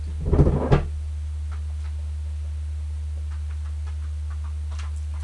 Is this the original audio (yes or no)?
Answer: yes